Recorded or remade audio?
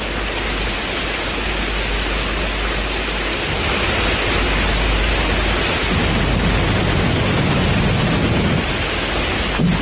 recorded